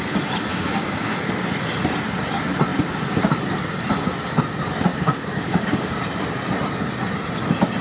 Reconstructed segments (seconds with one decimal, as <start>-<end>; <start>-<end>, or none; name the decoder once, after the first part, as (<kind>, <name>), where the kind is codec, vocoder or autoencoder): 0.5-1.2 (codec, DAC); 4.9-5.9